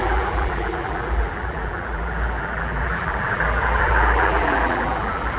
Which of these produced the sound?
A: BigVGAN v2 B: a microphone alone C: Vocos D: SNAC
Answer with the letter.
A